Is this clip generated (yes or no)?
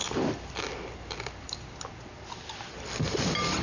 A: no